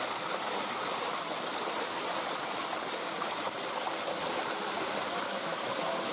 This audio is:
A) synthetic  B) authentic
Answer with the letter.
B